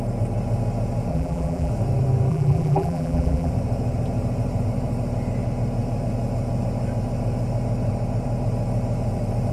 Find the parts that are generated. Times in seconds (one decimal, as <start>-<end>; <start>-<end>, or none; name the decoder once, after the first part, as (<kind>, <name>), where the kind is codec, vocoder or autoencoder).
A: 1.1-1.7 (vocoder, BigVGAN v2); 2.3-3.5